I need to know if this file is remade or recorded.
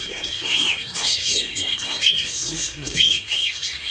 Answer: remade